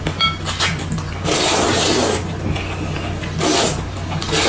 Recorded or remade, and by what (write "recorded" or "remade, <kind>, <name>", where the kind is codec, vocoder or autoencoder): recorded